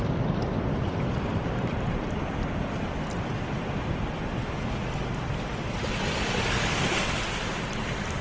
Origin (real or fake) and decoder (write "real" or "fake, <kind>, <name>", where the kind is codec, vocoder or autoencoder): fake, vocoder, BigVGAN v2